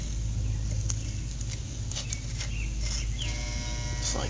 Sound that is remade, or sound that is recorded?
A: recorded